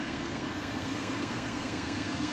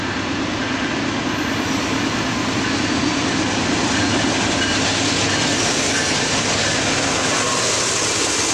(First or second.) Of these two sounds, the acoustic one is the second